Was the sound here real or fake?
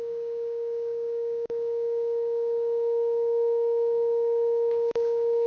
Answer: fake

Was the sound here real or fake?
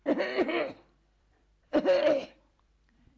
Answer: fake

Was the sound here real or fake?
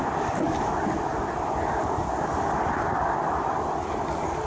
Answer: real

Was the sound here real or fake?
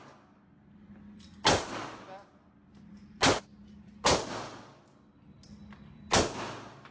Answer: real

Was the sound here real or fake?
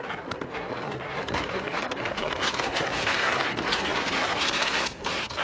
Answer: fake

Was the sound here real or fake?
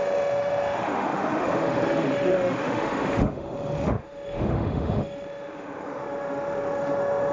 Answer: fake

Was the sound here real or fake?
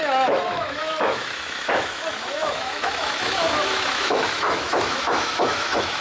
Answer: fake